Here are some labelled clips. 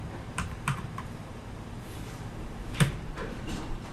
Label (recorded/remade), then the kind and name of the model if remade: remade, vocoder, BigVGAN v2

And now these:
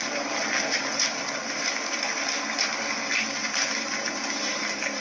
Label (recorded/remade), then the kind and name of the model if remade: remade, vocoder, BigVGAN v2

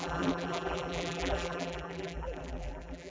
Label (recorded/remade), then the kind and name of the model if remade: remade, vocoder, BigVGAN v2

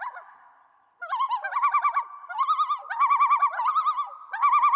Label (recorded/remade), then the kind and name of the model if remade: remade, vocoder, BigVGAN v2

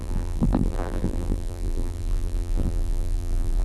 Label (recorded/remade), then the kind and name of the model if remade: remade, vocoder, BigVGAN v2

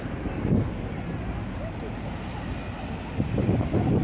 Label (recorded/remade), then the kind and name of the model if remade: recorded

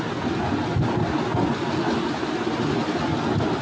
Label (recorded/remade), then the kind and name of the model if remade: recorded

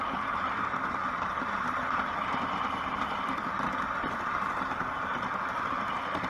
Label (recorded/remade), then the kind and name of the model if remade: remade, vocoder, BigVGAN v2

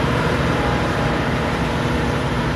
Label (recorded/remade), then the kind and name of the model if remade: remade, vocoder, BigVGAN v2